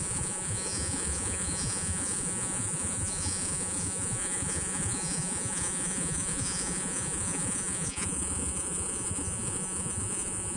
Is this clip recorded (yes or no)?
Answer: no